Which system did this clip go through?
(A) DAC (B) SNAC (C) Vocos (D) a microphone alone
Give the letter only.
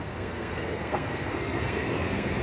B